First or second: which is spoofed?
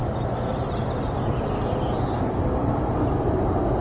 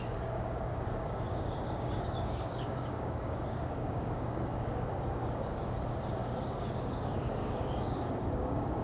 second